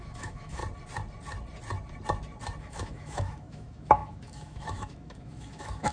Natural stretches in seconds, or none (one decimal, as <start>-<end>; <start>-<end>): 0.6-2.6